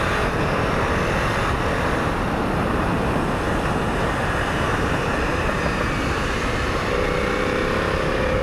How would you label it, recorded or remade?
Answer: recorded